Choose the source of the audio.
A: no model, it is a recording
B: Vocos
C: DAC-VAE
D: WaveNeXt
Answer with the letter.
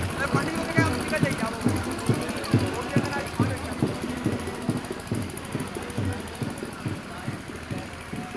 A